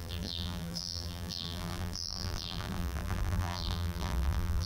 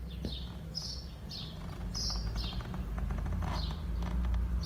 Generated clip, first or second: first